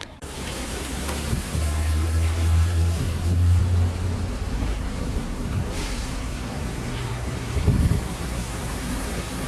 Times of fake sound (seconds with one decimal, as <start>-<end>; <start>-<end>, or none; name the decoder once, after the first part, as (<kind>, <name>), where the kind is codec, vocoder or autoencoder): 0.0-3.6 (codec, SNAC); 4.5-9.5